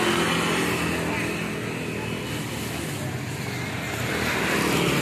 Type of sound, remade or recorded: recorded